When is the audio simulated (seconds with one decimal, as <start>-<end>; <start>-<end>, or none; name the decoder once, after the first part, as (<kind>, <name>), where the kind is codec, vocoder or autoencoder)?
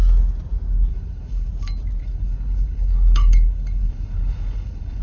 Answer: 0.9-1.5 (codec, HILCodec); 2.0-5.0